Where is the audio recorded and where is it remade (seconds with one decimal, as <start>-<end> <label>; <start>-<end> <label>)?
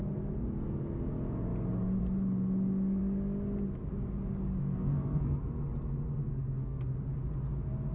0.0-4.6 recorded; 4.6-5.4 remade; 5.4-6.2 recorded; 6.2-6.8 remade; 6.8-7.9 recorded